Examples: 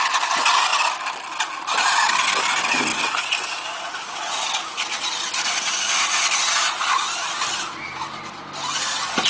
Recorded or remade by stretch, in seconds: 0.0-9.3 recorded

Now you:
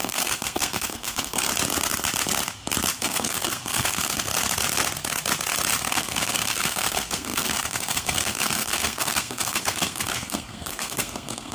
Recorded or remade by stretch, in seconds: 0.0-1.5 remade; 1.5-3.0 recorded; 3.0-4.3 remade; 4.3-5.8 recorded; 5.8-11.5 remade

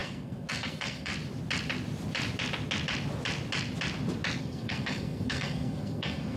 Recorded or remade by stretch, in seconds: 0.0-1.1 remade; 1.1-4.4 recorded; 4.4-6.4 remade